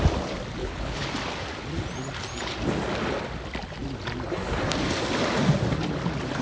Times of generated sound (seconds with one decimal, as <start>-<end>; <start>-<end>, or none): 0.6-1.1